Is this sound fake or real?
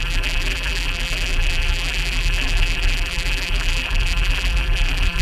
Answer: fake